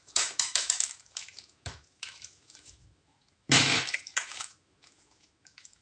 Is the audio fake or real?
fake